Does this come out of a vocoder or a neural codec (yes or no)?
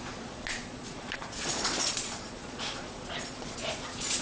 yes